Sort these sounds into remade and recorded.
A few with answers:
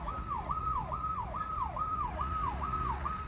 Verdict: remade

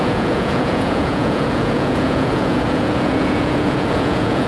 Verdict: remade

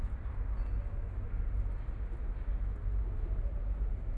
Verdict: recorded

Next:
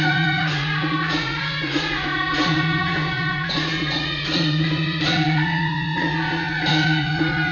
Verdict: remade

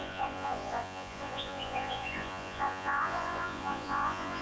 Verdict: remade